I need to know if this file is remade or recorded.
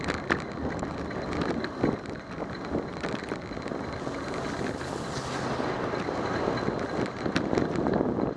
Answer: recorded